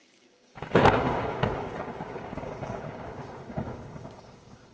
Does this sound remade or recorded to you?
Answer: remade